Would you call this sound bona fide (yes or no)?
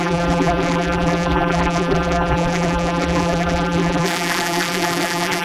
no